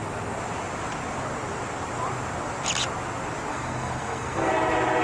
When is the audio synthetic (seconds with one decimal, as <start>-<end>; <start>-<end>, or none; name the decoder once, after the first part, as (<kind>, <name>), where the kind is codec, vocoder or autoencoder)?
3.5-4.5 (codec, SNAC)